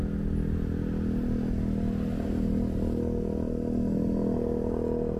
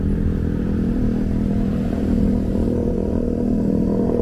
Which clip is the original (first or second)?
first